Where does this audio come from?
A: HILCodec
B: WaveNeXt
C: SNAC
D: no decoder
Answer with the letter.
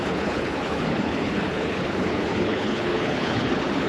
A